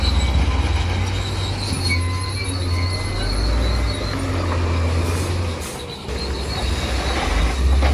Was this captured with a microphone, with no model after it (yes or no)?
yes